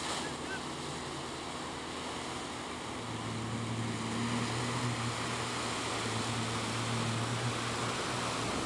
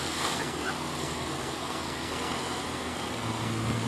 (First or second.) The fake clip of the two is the second